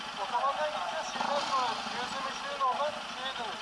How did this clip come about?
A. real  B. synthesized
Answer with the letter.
A